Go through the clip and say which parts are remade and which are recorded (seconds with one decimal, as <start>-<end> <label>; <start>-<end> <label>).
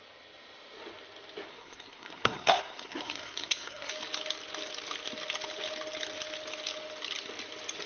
0.0-1.5 recorded; 1.5-3.9 remade; 3.9-7.9 recorded